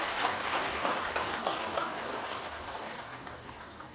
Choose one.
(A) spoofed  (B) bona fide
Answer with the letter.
A